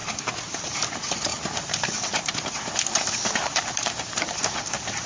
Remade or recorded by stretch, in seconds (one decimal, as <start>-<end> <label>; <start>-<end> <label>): 0.0-5.1 remade

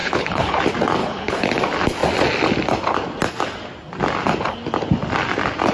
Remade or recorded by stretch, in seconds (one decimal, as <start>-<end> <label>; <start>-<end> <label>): 0.0-0.6 remade; 0.6-1.0 recorded; 1.0-1.5 remade; 1.5-5.7 recorded

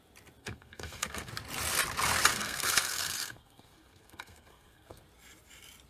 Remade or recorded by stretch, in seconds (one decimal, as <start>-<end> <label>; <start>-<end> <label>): 0.0-0.4 recorded; 0.4-1.3 remade; 1.3-2.3 recorded; 2.3-5.0 remade; 5.0-5.9 recorded

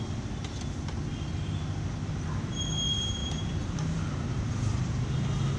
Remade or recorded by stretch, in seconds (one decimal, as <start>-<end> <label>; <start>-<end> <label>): 0.0-3.2 recorded; 3.2-5.1 remade; 5.1-5.6 recorded